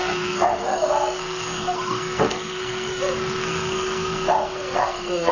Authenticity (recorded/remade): remade